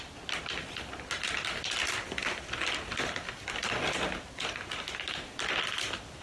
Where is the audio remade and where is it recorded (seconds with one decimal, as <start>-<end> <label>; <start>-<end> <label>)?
0.0-6.2 recorded

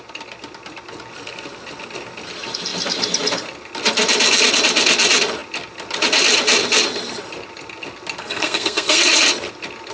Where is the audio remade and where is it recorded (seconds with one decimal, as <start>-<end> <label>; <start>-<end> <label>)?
0.0-8.2 recorded; 8.2-9.0 remade; 9.0-9.9 recorded